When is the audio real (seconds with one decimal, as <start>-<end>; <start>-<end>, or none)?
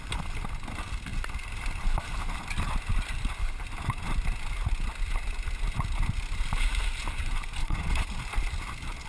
0.0-7.6; 8.1-9.1